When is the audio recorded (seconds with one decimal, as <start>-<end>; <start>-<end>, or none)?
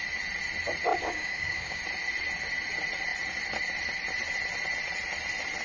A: 0.0-0.9; 1.8-5.6